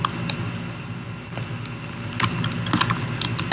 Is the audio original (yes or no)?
yes